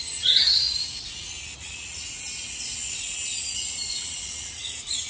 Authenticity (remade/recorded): remade